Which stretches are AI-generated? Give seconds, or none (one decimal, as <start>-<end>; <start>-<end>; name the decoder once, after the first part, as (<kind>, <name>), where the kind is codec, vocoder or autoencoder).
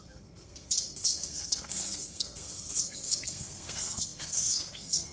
0.0-5.1 (codec, SNAC)